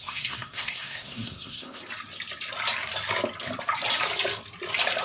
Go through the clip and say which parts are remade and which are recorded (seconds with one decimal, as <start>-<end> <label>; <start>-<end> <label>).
0.0-1.8 remade; 1.8-5.0 recorded